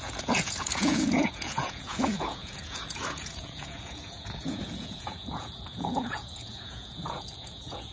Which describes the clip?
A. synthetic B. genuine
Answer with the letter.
A